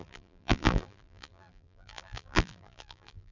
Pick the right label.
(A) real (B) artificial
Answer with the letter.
B